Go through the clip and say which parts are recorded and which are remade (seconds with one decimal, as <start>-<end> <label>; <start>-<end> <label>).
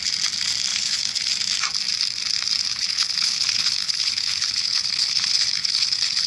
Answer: 0.0-0.7 recorded; 0.7-1.3 remade; 1.3-2.7 recorded; 2.7-6.3 remade